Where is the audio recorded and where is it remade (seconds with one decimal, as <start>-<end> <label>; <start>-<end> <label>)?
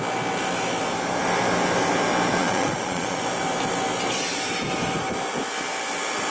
0.0-2.4 recorded; 2.4-3.2 remade; 3.2-6.3 recorded